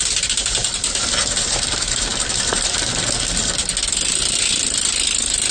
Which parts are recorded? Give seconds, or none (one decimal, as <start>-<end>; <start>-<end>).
0.0-5.5